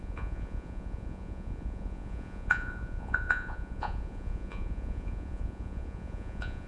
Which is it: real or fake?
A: fake